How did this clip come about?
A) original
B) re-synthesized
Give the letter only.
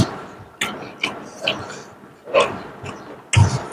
A